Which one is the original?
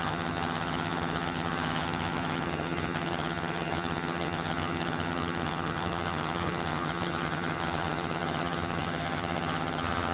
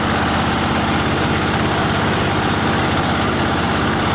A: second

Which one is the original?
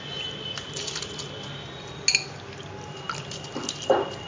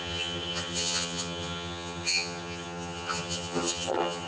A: first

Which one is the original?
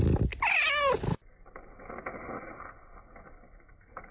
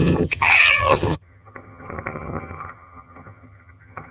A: first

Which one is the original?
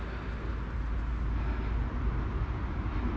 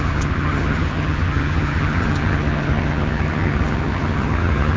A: first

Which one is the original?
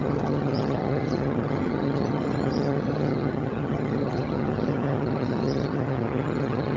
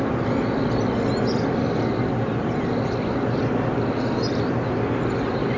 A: second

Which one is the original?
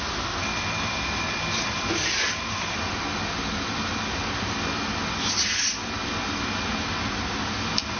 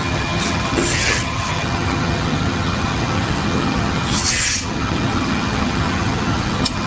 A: first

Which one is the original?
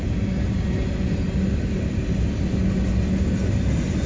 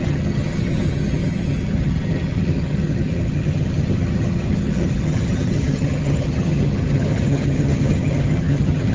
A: first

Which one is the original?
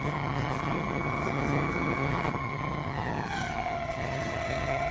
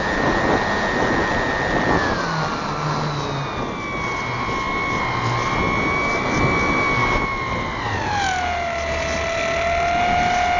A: second